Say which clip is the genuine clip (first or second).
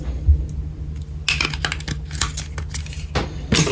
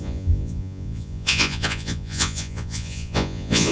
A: first